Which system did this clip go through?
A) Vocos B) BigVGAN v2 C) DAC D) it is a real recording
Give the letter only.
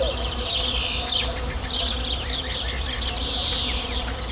B